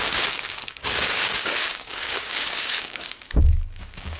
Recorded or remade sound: remade